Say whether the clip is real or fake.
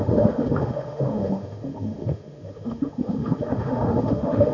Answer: fake